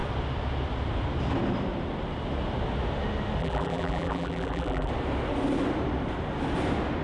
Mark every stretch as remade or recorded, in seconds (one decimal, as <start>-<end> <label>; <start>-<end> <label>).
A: 0.0-3.4 recorded; 3.4-4.9 remade; 4.9-7.0 recorded